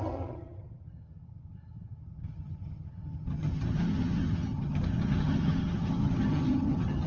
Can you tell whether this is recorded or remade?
remade